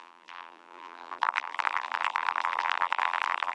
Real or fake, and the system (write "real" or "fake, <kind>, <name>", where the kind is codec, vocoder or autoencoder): fake, vocoder, BigVGAN v2